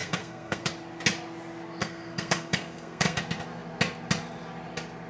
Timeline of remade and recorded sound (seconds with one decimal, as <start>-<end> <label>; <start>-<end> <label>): 0.0-0.7 remade; 0.7-1.8 recorded; 1.8-3.2 remade; 3.2-5.1 recorded